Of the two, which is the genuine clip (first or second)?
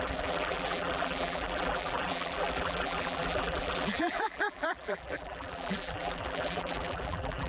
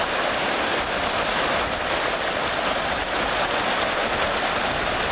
second